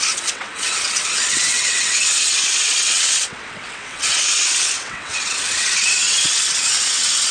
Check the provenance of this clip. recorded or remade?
remade